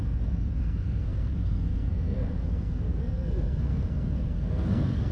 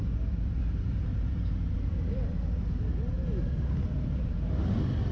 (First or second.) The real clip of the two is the second